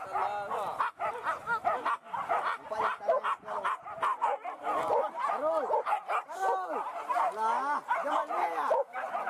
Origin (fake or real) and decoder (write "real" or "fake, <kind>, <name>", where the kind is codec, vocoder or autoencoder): real